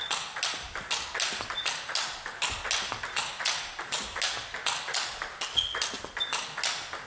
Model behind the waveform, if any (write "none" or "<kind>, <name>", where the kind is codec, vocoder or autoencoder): none